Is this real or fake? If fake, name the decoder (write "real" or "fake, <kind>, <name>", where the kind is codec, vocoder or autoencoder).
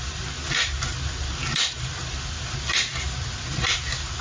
real